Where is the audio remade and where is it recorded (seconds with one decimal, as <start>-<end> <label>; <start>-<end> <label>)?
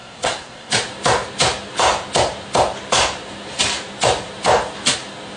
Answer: 0.0-0.7 remade; 0.7-5.4 recorded